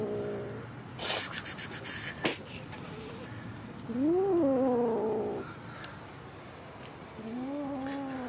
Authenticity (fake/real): real